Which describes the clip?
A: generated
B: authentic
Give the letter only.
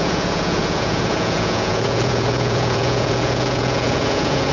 A